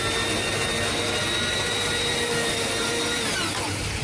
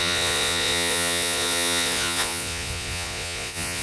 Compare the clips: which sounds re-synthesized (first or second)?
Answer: second